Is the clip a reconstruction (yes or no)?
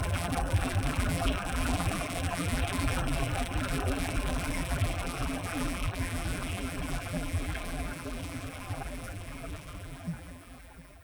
yes